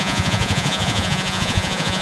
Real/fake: fake